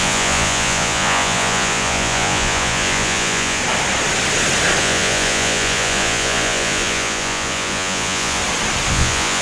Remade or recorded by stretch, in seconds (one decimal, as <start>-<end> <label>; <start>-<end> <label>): 0.0-3.6 remade; 3.6-4.8 recorded; 4.8-8.4 remade; 8.4-8.9 recorded; 8.9-9.4 remade